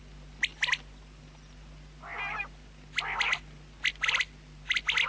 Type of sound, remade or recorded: recorded